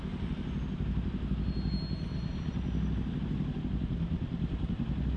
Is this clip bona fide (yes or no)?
yes